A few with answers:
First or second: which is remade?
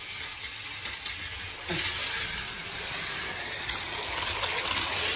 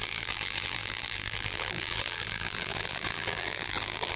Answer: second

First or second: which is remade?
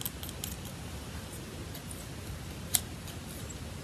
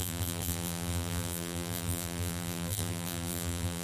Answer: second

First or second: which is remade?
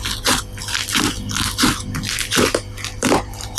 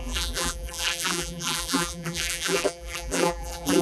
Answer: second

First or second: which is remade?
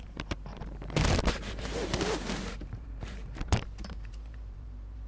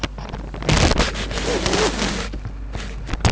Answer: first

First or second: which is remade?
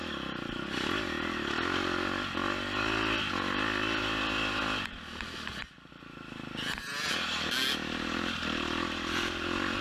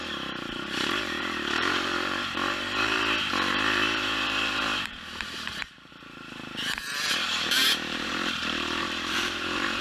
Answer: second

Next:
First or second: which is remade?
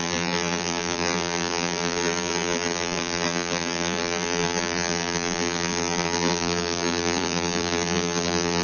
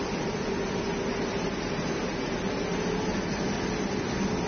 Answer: first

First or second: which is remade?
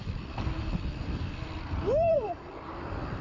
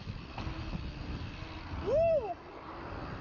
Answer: first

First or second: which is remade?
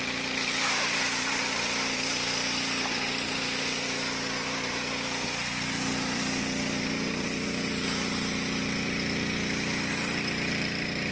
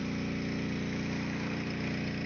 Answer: first